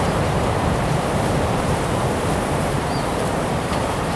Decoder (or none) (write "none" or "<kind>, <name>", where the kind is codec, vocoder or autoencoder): vocoder, BigVGAN v2